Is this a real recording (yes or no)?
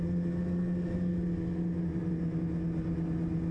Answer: yes